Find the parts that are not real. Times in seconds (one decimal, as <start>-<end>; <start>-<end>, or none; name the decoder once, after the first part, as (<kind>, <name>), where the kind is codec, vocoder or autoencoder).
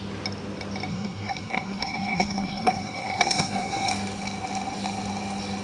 0.9-3.9 (codec, SNAC)